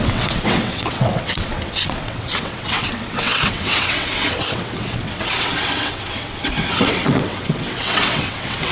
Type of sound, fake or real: fake